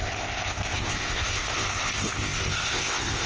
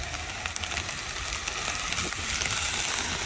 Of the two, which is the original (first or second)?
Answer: second